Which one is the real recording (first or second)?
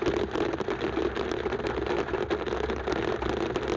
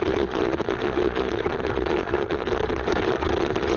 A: first